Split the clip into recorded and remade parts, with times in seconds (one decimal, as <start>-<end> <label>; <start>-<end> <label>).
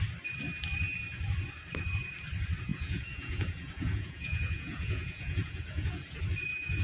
0.0-2.7 recorded; 2.7-6.2 remade; 6.2-6.8 recorded